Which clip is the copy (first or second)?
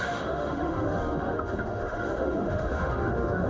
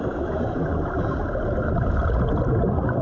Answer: first